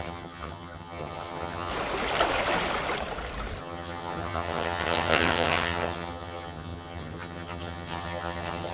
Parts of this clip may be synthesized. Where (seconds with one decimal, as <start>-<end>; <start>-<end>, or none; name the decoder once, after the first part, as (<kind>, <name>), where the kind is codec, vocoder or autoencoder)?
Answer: 0.0-1.7 (vocoder, HiFi-GAN); 3.6-8.7